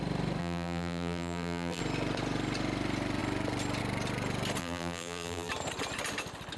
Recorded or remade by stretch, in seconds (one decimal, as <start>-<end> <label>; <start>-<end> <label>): 0.0-0.4 recorded; 0.4-1.8 remade; 1.8-4.6 recorded; 4.6-5.5 remade; 5.5-6.6 recorded